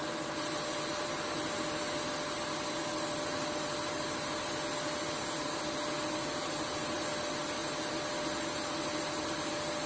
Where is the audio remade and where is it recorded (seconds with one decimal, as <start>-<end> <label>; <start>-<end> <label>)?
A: 0.0-9.9 recorded